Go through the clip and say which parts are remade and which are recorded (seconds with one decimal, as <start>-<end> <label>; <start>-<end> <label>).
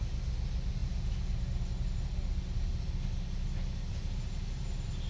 0.0-5.1 recorded